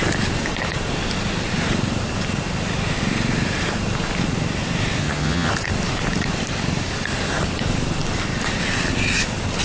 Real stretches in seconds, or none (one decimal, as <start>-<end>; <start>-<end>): 0.0-5.0; 5.5-9.6